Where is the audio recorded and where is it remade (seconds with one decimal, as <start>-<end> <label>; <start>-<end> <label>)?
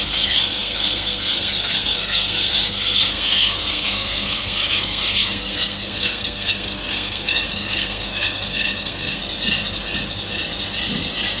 0.0-9.2 remade; 9.2-11.4 recorded